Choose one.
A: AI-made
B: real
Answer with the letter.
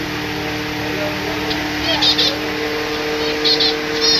B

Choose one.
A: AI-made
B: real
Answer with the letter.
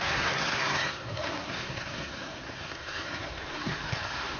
A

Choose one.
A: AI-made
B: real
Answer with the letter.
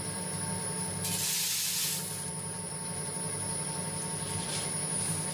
A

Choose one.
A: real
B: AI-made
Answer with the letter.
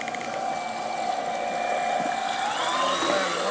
A